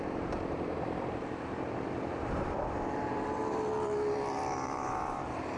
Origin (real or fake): fake